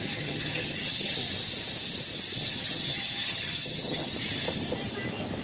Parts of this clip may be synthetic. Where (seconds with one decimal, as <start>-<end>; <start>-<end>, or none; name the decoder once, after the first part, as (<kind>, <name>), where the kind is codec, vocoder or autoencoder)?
0.0-1.2 (vocoder, HiFi-GAN); 2.6-4.1